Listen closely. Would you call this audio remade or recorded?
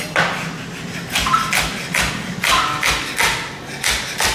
recorded